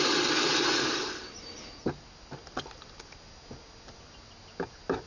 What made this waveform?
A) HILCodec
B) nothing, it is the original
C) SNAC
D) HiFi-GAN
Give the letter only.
B